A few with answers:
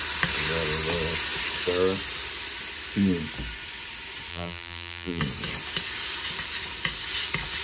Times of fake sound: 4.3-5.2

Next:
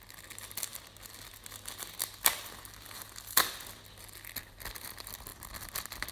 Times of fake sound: none

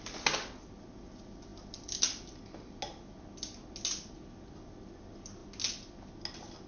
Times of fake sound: none

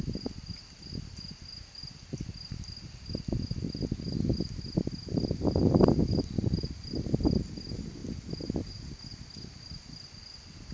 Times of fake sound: none

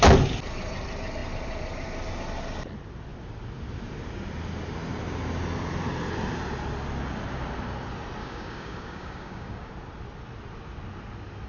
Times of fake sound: 8.2-9.7